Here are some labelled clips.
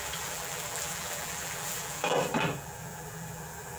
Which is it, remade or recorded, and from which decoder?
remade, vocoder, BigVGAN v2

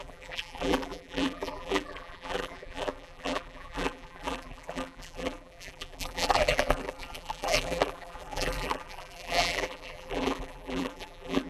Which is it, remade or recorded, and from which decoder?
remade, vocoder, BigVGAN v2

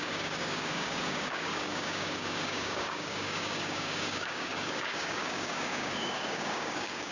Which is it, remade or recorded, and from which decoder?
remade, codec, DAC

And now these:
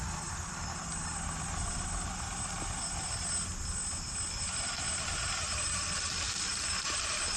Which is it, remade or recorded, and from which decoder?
recorded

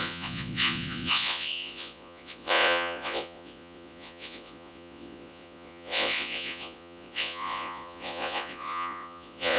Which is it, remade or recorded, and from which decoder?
remade, vocoder, Vocos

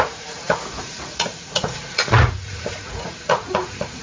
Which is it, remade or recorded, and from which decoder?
remade, vocoder, Vocos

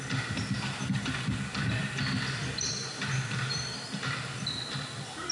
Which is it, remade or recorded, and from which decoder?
recorded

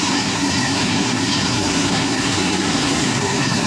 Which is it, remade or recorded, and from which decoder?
remade, codec, SNAC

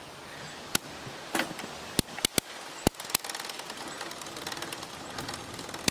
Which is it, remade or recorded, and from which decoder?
recorded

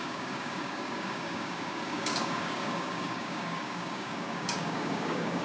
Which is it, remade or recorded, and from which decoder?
remade, codec, DAC